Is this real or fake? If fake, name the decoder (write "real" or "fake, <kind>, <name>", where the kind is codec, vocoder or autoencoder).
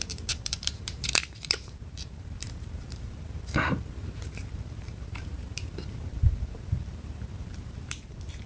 fake, vocoder, BigVGAN v2